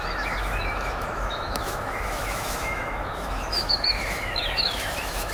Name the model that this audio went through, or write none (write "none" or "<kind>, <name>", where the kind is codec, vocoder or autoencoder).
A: autoencoder, DAC-VAE